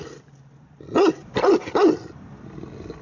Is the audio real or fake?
real